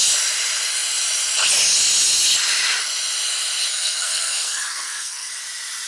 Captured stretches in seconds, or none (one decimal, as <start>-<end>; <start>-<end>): 0.0-3.7; 5.3-5.9